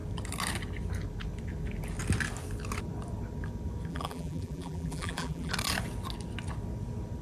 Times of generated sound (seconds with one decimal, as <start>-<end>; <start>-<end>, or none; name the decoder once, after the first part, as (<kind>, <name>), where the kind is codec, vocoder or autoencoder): 3.9-5.5 (vocoder, BigVGAN v2)